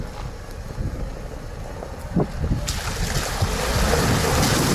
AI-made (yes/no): no